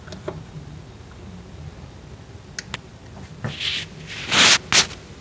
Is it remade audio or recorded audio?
recorded